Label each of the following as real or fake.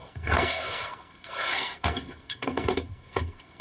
fake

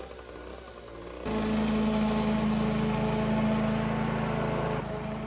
real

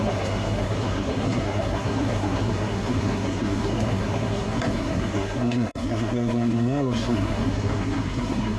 fake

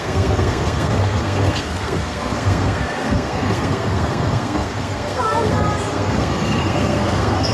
fake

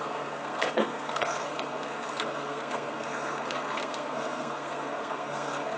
fake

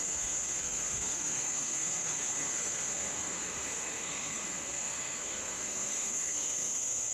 fake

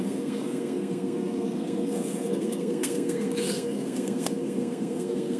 fake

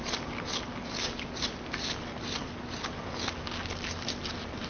real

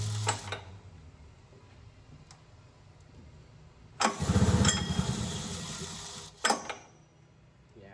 real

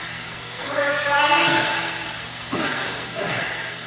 fake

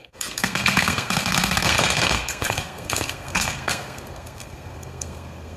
fake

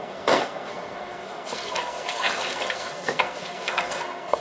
fake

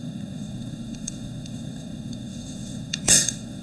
fake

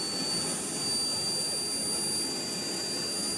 real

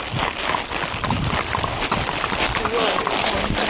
real